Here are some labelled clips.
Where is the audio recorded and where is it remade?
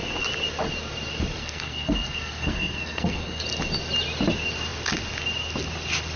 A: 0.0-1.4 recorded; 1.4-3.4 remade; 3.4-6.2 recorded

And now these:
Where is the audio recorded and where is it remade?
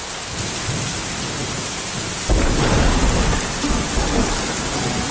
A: 0.0-5.1 recorded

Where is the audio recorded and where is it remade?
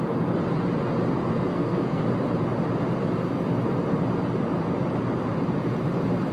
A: 0.0-1.5 recorded; 1.5-2.0 remade; 2.0-6.3 recorded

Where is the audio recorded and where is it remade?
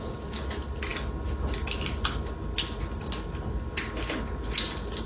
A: 0.0-5.1 recorded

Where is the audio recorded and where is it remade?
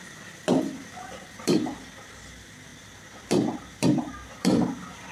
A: 0.0-5.1 remade